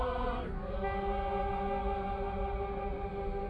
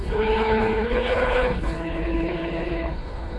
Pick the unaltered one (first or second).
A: first